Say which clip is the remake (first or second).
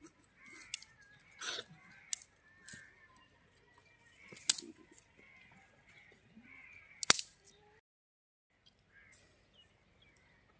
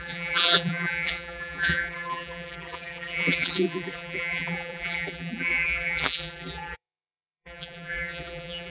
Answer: second